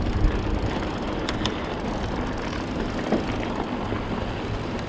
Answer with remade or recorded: recorded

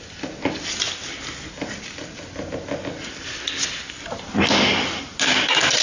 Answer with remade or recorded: recorded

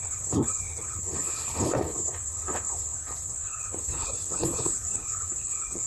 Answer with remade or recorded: remade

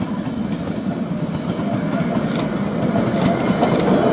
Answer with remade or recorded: recorded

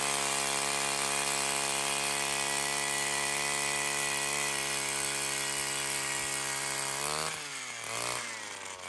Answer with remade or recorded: recorded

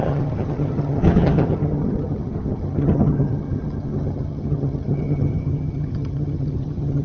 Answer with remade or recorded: remade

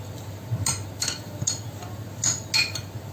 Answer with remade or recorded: recorded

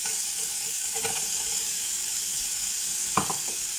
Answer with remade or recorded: remade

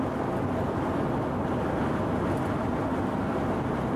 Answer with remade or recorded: recorded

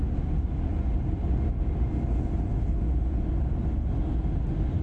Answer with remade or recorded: recorded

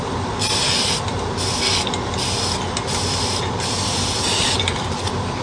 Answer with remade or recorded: recorded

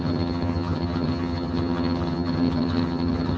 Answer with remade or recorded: remade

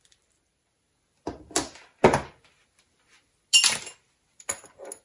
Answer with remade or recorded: recorded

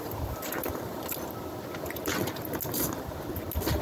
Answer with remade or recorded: recorded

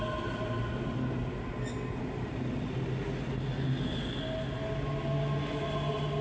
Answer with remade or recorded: recorded